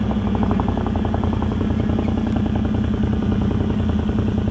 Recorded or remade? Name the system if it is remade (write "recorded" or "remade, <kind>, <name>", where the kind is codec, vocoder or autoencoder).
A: recorded